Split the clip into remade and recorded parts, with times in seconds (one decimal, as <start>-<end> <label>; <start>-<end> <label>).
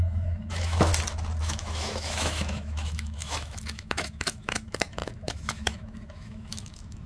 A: 0.0-0.9 remade; 0.9-1.4 recorded; 1.4-7.1 remade